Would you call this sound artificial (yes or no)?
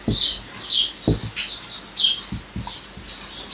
no